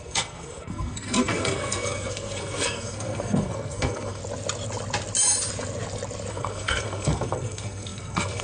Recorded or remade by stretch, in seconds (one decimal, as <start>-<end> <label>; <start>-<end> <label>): 0.0-4.2 remade; 4.2-6.3 recorded; 6.3-8.4 remade

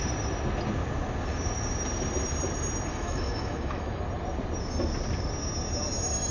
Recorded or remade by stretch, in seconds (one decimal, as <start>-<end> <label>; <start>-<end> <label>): 0.0-2.9 recorded; 2.9-4.0 remade; 4.0-6.3 recorded

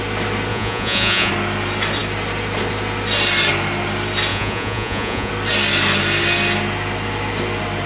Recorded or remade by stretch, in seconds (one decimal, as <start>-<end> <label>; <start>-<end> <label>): 0.0-0.5 recorded; 0.5-1.3 remade; 1.3-4.3 recorded; 4.3-5.3 remade; 5.3-7.9 recorded

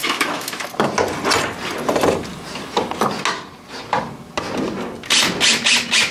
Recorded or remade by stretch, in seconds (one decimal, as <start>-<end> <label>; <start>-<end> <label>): 0.0-0.6 remade; 0.6-6.1 recorded